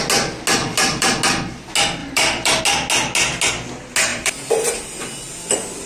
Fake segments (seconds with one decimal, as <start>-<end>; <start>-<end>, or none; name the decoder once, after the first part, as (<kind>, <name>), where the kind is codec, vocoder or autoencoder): 0.6-1.1 (vocoder, BigVGAN v2); 2.0-2.6; 4.1-4.7